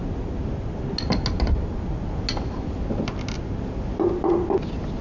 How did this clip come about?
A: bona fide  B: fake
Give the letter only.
A